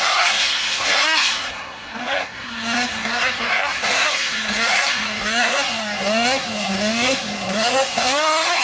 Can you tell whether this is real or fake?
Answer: fake